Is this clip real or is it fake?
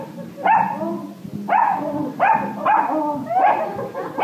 real